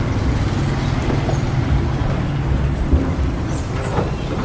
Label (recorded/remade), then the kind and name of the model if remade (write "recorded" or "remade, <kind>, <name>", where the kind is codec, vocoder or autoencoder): recorded